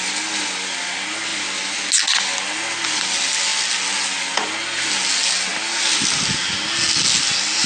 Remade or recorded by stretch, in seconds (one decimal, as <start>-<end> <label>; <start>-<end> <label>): 0.0-7.7 recorded